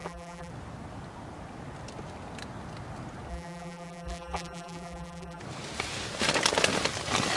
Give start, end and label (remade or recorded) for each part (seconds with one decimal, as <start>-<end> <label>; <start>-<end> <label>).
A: 0.0-0.5 remade; 0.5-3.3 recorded; 3.3-5.4 remade; 5.4-7.4 recorded